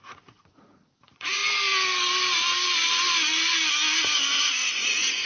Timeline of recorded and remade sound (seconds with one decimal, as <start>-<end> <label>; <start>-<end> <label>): 0.0-1.4 remade; 1.4-4.4 recorded; 4.4-5.3 remade